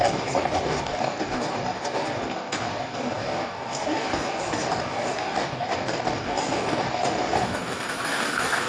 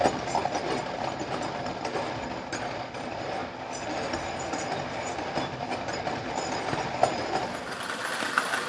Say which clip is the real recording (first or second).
second